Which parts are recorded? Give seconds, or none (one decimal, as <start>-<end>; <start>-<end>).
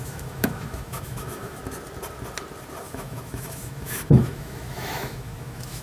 1.6-2.8